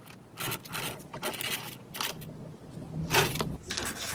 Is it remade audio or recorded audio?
recorded